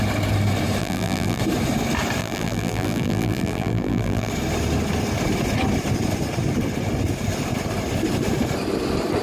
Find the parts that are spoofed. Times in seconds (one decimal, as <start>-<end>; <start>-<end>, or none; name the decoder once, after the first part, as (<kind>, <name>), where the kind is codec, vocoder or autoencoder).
0.8-1.4 (vocoder, BigVGAN v2); 2.2-4.3